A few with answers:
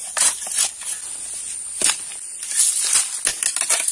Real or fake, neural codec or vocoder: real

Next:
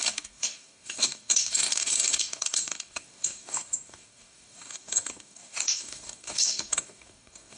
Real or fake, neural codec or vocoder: fake, codec, DAC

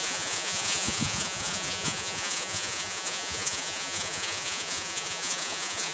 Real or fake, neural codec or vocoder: fake, vocoder, Vocos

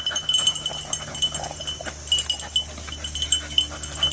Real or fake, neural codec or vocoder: real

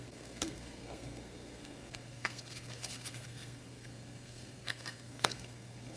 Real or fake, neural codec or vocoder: fake, codec, SNAC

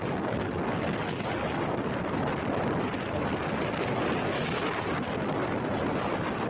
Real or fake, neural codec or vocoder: real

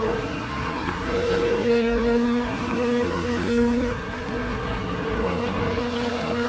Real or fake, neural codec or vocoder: fake, codec, SNAC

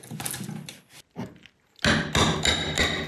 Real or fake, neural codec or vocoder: real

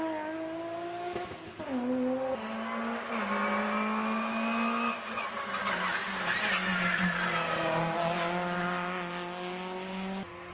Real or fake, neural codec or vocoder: real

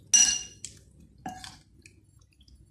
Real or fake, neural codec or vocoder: real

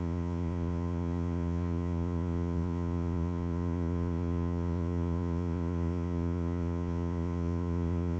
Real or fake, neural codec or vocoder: fake, vocoder, Vocos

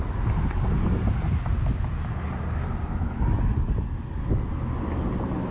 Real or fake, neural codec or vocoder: real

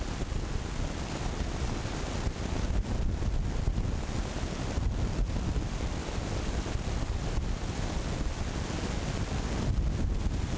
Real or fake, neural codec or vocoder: real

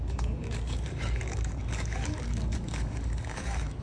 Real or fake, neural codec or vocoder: fake, codec, DAC